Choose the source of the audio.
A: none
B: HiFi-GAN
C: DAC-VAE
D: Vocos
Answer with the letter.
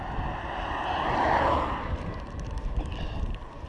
A